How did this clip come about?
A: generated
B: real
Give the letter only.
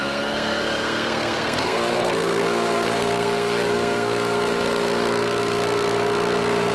A